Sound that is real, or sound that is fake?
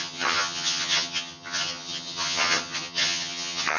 fake